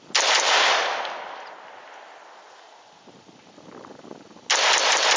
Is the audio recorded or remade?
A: recorded